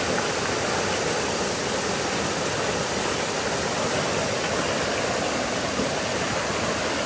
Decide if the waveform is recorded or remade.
recorded